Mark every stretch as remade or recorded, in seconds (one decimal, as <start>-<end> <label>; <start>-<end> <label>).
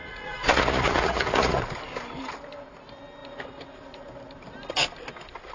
0.0-1.6 remade; 1.6-5.5 recorded